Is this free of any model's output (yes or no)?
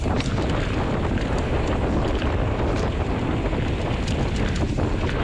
yes